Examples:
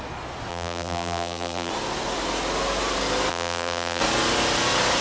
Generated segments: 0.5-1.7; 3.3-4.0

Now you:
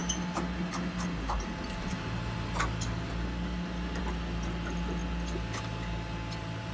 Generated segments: none